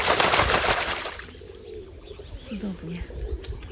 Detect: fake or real real